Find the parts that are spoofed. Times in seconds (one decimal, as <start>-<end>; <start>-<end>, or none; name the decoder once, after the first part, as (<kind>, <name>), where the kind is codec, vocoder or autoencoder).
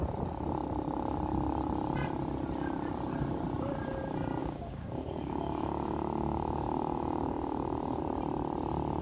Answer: 4.4-8.0 (codec, DAC)